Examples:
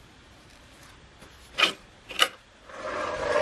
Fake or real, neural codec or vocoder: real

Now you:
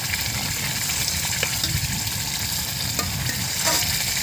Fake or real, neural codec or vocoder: real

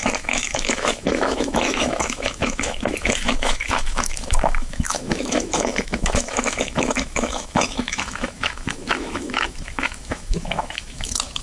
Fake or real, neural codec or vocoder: fake, autoencoder, DAC-VAE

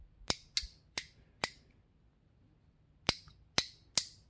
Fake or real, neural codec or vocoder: real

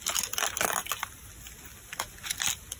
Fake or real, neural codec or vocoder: real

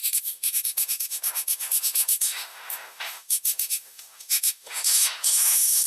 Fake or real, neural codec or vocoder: fake, autoencoder, DAC-VAE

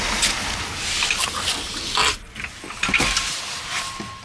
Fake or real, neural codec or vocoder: real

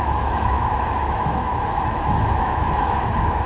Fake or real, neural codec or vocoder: fake, autoencoder, DAC-VAE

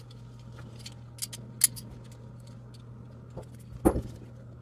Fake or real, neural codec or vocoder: real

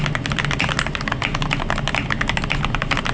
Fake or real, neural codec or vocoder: real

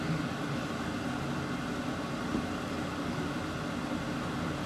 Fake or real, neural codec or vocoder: real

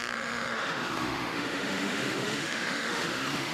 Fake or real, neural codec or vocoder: fake, autoencoder, DAC-VAE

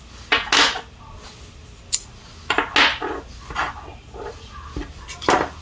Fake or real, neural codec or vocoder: real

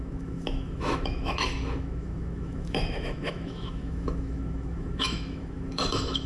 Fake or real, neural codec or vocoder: fake, autoencoder, DAC-VAE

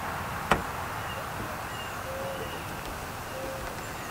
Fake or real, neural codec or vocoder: real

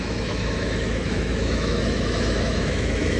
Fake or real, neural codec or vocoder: fake, autoencoder, DAC-VAE